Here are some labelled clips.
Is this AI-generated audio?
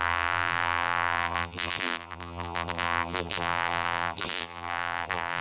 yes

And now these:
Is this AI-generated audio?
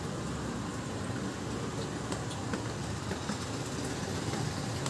no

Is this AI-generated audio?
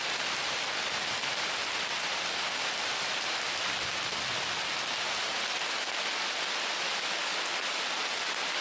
no